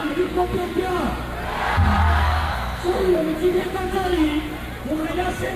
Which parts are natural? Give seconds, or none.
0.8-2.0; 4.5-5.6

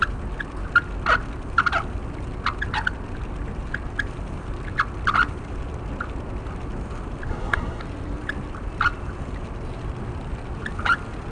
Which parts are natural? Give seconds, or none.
0.0-7.3; 7.8-11.3

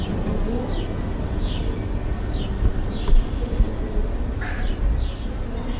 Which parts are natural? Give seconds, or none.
0.0-5.8

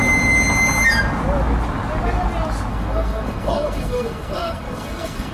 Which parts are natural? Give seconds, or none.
0.0-2.7